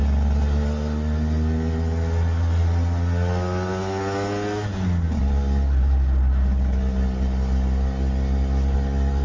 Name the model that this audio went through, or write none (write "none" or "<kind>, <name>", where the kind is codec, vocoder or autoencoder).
none